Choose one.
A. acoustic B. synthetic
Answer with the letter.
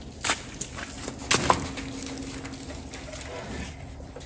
A